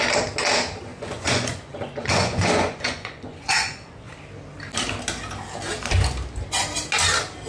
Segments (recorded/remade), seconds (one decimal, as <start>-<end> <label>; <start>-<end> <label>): 0.0-0.9 recorded; 0.9-4.1 remade; 4.1-7.5 recorded